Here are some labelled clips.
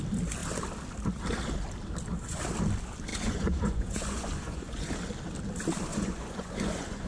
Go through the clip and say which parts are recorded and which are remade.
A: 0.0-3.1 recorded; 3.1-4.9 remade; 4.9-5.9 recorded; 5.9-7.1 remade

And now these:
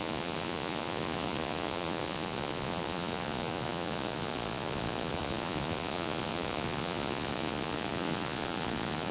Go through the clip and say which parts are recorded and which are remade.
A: 0.0-9.1 remade